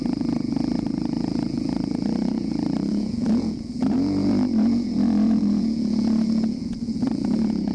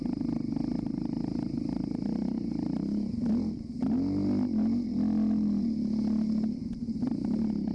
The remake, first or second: first